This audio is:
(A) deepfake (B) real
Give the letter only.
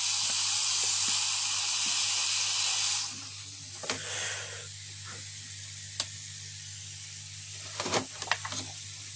B